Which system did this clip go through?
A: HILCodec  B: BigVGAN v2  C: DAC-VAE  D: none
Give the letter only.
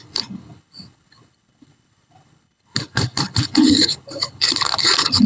A